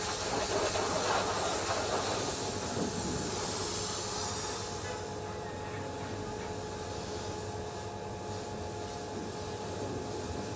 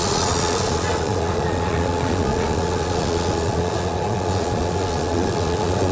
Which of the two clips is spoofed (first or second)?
second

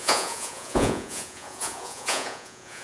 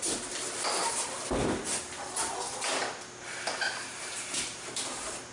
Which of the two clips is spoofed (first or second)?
first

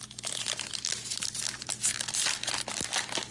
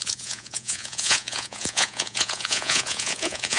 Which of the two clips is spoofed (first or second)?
second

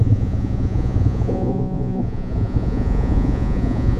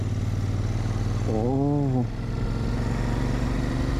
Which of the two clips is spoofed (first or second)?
first